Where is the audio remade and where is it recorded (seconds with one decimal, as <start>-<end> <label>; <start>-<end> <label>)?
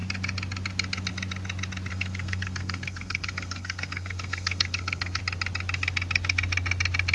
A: 0.0-1.9 recorded; 1.9-5.2 remade; 5.2-7.1 recorded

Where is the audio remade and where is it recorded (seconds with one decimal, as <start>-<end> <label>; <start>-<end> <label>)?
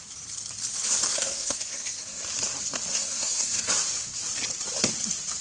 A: 0.0-1.1 recorded; 1.1-2.2 remade; 2.2-2.9 recorded; 2.9-3.7 remade; 3.7-5.4 recorded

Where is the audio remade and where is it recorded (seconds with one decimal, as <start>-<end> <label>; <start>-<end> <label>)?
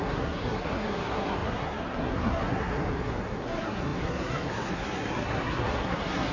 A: 0.0-6.3 remade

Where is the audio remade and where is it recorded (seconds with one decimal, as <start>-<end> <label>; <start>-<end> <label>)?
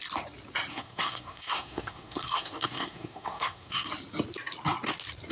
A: 0.0-0.7 recorded; 0.7-3.9 remade; 3.9-5.3 recorded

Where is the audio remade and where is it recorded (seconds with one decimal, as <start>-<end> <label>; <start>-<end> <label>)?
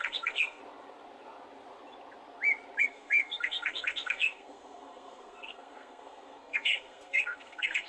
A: 0.0-0.6 remade; 0.6-2.8 recorded; 2.8-7.9 remade